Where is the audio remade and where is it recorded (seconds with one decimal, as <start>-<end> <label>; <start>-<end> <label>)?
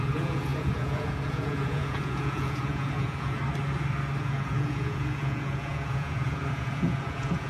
0.0-3.4 remade; 3.4-4.2 recorded; 4.2-7.5 remade